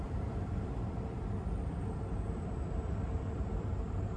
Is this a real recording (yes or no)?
no